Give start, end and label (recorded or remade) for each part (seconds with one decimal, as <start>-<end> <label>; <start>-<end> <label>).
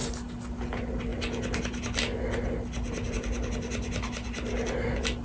0.0-5.2 recorded